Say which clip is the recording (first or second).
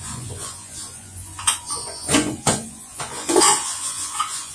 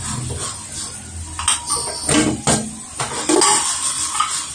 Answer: second